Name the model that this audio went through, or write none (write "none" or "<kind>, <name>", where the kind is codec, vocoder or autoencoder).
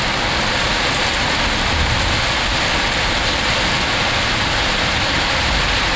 none